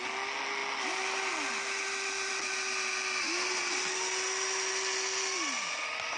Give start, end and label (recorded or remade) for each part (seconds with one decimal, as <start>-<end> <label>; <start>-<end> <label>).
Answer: 0.0-6.2 recorded